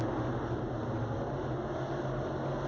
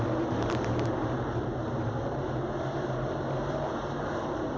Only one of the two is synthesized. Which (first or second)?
second